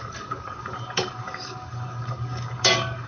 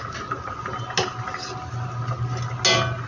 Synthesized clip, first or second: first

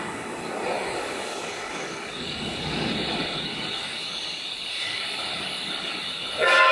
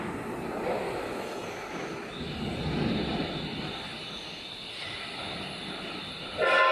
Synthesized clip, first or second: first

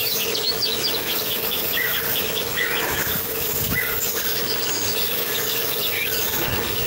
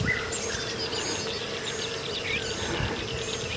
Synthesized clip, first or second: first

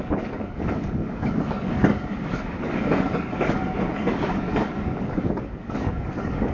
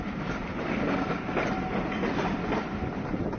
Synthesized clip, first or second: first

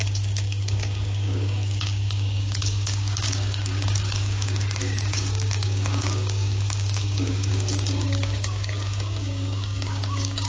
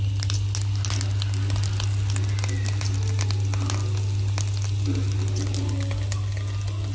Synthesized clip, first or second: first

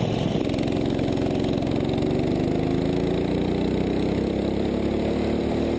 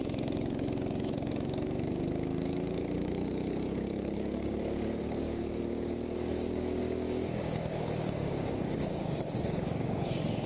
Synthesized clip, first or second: second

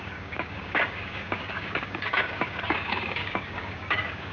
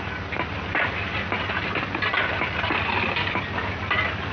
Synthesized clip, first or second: first